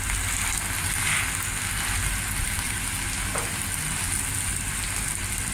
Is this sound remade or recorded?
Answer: recorded